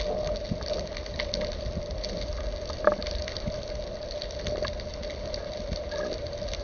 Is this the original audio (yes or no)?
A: yes